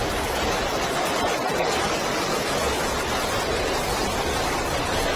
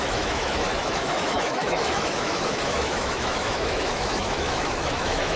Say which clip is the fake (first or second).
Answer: second